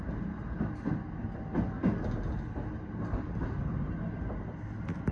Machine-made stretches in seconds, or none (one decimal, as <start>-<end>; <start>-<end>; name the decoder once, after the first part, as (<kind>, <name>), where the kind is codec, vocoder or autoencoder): none